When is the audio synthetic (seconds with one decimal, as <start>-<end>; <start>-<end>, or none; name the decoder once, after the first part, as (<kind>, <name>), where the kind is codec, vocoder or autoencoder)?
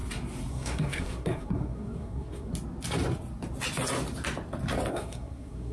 0.5-2.5 (codec, SNAC); 4.9-5.7